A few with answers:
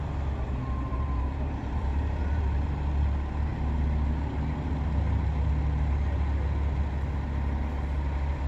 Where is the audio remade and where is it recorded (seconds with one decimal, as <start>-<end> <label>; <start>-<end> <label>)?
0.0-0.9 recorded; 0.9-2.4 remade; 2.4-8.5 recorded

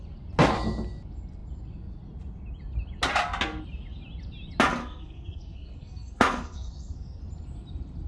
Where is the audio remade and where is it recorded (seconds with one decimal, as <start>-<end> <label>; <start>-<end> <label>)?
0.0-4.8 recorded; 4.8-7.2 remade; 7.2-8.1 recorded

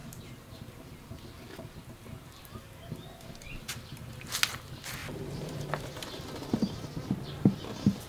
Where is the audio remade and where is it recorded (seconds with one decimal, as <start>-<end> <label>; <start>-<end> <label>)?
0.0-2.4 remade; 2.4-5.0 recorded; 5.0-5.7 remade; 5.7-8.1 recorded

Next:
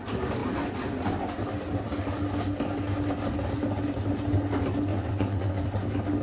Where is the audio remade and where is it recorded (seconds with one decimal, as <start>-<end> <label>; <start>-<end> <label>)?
0.0-4.9 recorded; 4.9-5.6 remade; 5.6-6.2 recorded

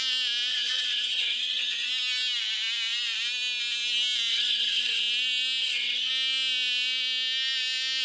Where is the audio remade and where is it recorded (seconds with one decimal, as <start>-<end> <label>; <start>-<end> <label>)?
0.0-0.5 recorded; 0.5-1.9 remade; 1.9-4.3 recorded; 4.3-5.0 remade; 5.0-5.6 recorded; 5.6-6.1 remade; 6.1-8.0 recorded